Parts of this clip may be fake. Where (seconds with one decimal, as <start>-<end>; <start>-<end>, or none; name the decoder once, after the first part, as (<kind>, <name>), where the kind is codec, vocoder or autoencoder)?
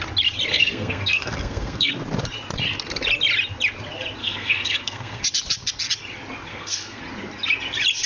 0.5-1.9 (codec, SNAC); 4.2-5.2; 6.5-7.0